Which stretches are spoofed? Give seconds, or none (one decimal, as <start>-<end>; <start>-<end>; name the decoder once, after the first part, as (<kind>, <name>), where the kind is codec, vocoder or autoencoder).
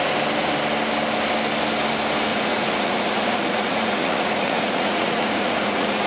2.3-6.1 (vocoder, Vocos)